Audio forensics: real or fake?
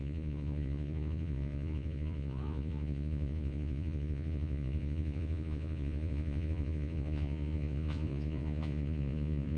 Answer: fake